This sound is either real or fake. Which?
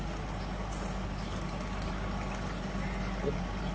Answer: real